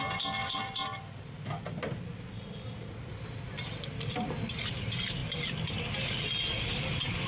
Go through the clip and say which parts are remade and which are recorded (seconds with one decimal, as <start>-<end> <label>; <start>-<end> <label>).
0.0-7.3 recorded